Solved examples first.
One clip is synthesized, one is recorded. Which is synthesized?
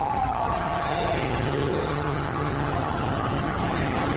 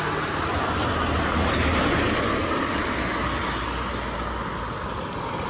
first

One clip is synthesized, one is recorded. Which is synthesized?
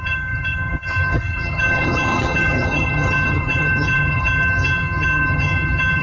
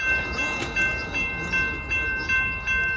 first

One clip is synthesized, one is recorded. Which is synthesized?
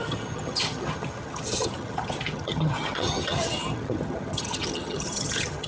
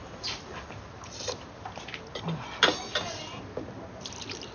first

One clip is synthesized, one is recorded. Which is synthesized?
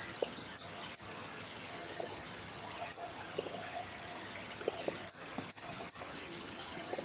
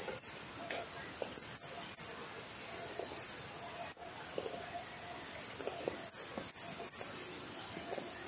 first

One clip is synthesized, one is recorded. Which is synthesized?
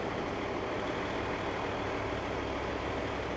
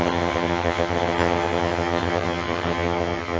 second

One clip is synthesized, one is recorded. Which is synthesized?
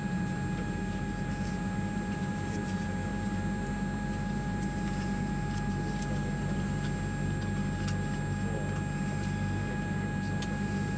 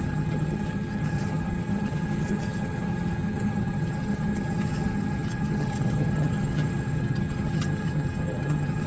second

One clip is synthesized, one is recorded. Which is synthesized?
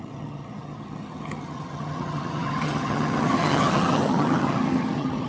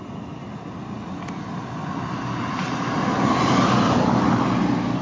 first